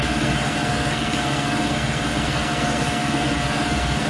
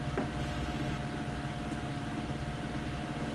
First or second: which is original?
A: second